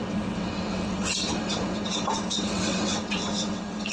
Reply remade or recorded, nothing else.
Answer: remade